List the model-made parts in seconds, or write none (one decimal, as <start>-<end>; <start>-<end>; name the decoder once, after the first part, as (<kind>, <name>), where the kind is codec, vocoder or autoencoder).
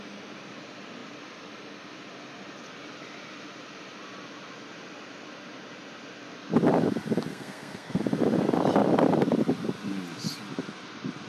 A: 7.3-8.0 (codec, SNAC)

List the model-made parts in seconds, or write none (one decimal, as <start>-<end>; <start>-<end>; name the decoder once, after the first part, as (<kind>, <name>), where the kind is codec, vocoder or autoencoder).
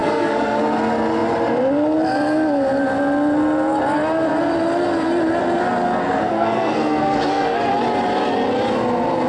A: 0.0-0.6 (codec, SNAC); 6.0-7.7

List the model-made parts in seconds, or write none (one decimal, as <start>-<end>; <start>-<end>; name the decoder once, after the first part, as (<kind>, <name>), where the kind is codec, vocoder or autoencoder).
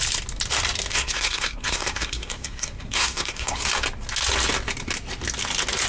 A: 0.9-3.6 (codec, SNAC)